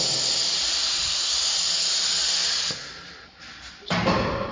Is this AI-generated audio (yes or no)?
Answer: no